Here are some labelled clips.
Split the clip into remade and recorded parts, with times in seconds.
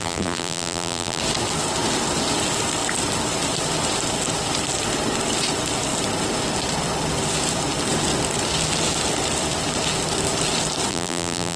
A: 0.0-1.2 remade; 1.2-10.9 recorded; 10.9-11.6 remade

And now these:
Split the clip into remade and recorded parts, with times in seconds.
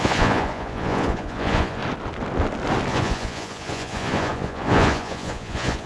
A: 0.0-1.8 remade; 1.8-2.9 recorded; 2.9-5.9 remade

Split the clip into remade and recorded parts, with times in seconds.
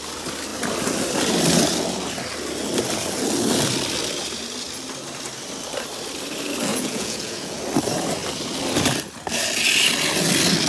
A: 0.0-6.7 recorded; 6.7-7.6 remade; 7.6-10.7 recorded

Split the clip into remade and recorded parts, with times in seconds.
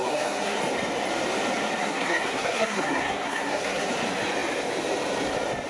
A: 0.0-0.6 remade; 0.6-1.8 recorded; 1.8-3.9 remade; 3.9-5.7 recorded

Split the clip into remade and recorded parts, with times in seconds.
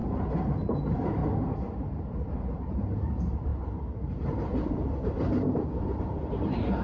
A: 0.0-0.7 recorded; 0.7-1.2 remade; 1.2-2.0 recorded; 2.0-6.8 remade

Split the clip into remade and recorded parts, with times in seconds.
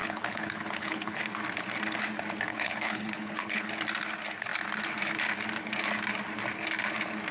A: 0.0-1.2 remade; 1.2-2.5 recorded; 2.5-3.7 remade; 3.7-7.3 recorded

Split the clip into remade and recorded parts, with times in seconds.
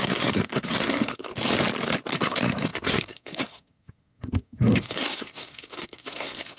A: 0.0-1.3 remade; 1.3-2.1 recorded; 2.1-6.6 remade